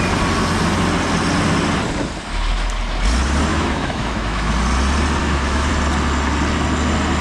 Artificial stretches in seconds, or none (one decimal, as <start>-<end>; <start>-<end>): 3.5-4.5; 5.2-5.7